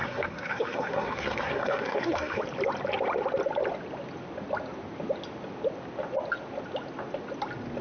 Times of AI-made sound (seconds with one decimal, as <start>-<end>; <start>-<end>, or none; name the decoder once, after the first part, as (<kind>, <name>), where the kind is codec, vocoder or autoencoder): 0.0-2.4 (codec, SNAC)